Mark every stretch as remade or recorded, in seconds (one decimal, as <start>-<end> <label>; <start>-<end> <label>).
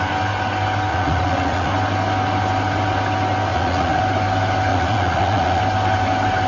0.0-0.9 recorded; 0.9-1.7 remade; 1.7-3.5 recorded; 3.5-4.0 remade; 4.0-4.7 recorded; 4.7-5.6 remade; 5.6-6.5 recorded